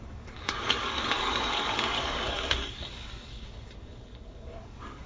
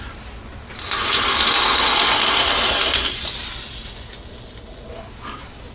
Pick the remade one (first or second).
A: first